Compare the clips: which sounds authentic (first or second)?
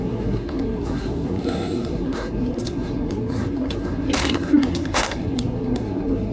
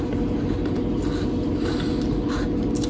second